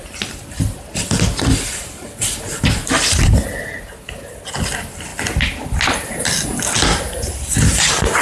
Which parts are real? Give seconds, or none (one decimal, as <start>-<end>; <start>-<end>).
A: 0.0-8.2